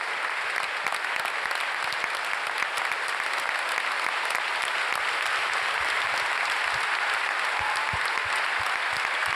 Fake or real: real